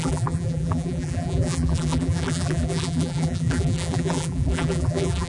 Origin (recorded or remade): remade